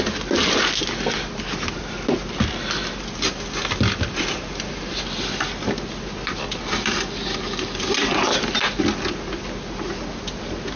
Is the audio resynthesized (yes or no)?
no